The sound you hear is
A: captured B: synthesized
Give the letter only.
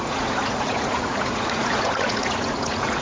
B